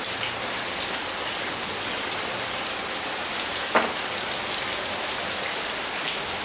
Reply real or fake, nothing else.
real